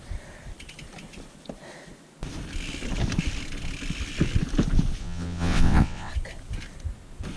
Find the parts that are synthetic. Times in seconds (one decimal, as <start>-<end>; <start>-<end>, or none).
5.0-6.1